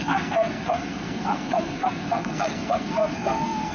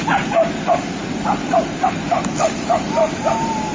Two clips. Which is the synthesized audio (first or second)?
first